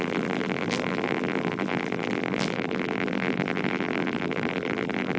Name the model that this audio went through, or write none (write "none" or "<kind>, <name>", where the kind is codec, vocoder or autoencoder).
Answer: vocoder, BigVGAN v2